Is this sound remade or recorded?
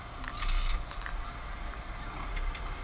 recorded